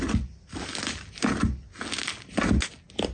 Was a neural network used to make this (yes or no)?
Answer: no